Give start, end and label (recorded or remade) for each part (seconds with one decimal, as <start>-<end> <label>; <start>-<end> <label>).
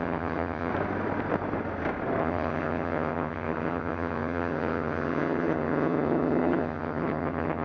0.0-0.7 remade; 0.7-2.2 recorded; 2.2-7.6 remade